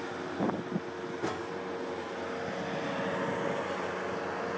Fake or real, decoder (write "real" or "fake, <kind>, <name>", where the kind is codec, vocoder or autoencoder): real